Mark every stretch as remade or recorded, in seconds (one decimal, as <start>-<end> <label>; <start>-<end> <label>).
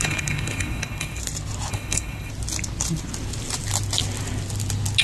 0.0-1.2 remade; 1.2-1.7 recorded; 1.7-2.3 remade; 2.3-5.0 recorded